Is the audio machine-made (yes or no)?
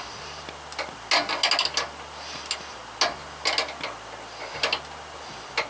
no